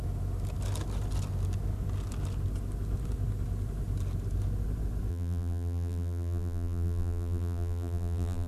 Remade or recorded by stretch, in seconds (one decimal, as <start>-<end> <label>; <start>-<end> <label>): 0.0-5.1 recorded; 5.1-8.5 remade